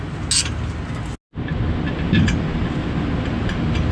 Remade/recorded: recorded